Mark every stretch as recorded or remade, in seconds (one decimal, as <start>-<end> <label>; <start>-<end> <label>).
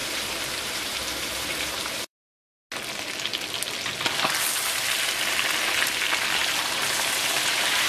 0.0-2.3 remade; 2.3-6.5 recorded; 6.5-7.9 remade